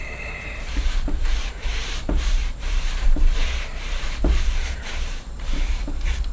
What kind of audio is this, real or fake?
fake